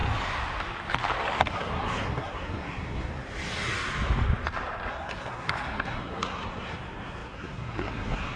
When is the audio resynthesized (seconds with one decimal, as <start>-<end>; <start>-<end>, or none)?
1.4-3.1; 4.9-8.4